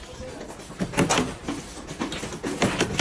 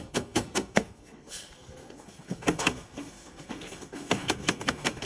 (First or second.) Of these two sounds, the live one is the first